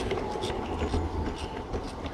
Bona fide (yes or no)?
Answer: yes